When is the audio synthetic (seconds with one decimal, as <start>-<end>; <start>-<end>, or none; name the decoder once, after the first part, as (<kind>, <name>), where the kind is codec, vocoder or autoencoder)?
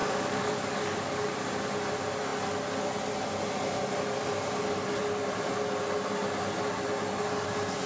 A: 0.0-1.3 (codec, DAC)